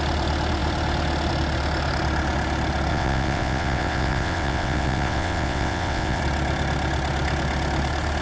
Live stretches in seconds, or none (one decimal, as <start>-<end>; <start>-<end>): 0.0-2.9; 6.2-8.2